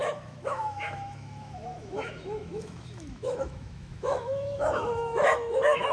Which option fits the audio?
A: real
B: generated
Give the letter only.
B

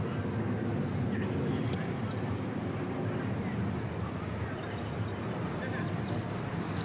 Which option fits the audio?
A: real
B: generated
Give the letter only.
A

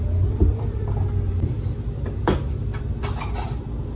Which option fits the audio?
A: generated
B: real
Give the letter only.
B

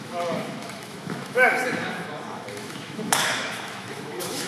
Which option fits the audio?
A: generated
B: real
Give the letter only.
A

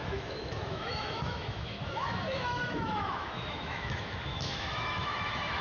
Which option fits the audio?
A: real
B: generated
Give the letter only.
B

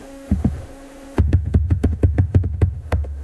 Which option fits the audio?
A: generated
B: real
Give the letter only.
A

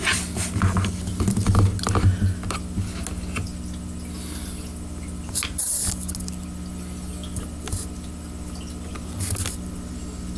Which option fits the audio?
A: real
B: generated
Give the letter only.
A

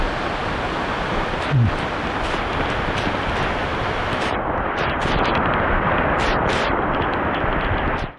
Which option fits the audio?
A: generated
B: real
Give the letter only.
B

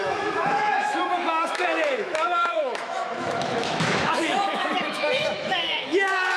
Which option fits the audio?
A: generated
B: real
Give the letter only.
A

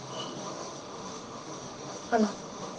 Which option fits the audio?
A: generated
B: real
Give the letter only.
A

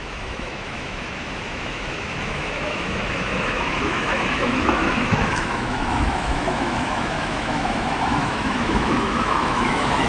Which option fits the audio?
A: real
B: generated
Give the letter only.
B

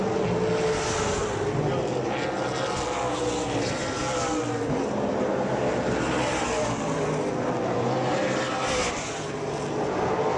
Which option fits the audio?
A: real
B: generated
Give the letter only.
A